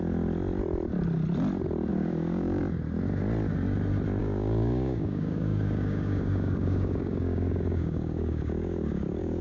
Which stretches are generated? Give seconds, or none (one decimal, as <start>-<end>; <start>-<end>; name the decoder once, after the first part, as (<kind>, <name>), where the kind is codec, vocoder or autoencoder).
1.9-2.6 (codec, DAC); 4.2-9.4